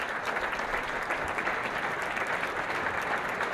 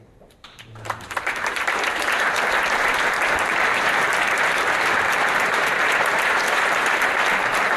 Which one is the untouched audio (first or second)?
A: first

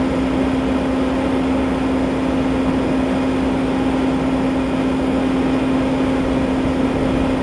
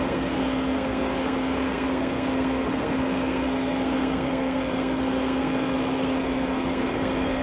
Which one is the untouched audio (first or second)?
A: first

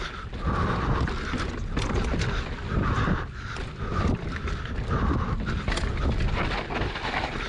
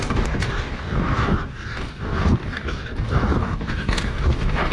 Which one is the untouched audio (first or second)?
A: first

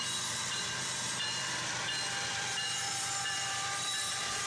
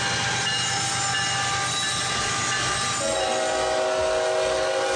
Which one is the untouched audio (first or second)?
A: second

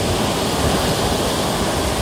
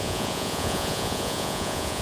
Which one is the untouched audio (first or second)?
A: first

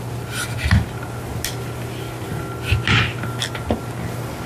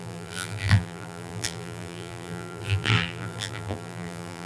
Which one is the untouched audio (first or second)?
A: first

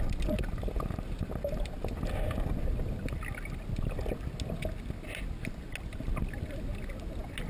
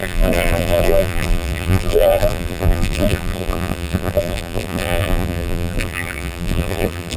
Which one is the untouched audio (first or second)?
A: first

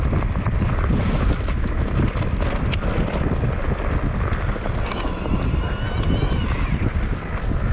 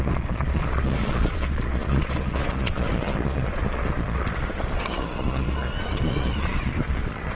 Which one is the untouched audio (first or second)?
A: first